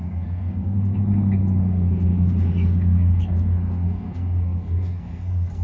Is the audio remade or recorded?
remade